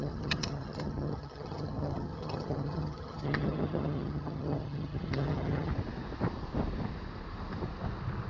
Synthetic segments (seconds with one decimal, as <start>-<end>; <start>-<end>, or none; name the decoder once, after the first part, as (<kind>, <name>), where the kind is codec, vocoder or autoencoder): 0.0-5.7 (vocoder, HiFi-GAN)